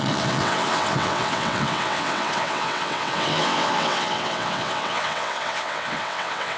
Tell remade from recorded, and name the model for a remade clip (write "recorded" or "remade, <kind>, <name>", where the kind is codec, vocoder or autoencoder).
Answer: remade, vocoder, WaveNeXt